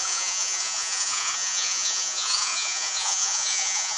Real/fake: fake